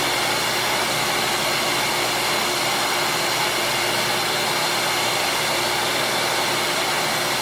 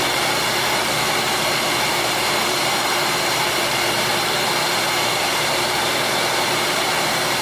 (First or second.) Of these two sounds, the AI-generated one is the second